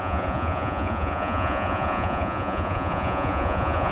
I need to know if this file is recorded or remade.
remade